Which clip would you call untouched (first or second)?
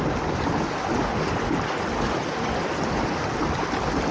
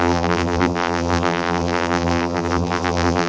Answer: first